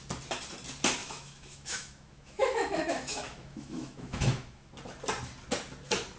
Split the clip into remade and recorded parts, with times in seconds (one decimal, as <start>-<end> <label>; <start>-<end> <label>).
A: 0.0-1.0 recorded; 1.0-4.7 remade; 4.7-6.2 recorded